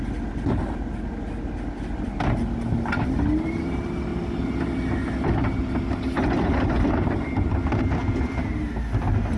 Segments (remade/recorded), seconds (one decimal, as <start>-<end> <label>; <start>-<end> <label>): 0.0-9.4 recorded